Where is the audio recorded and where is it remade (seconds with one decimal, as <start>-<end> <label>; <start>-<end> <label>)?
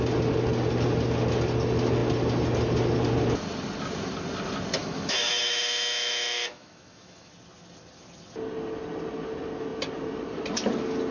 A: 0.0-4.8 recorded; 4.8-7.3 remade; 7.3-11.1 recorded